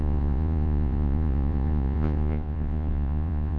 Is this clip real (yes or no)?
no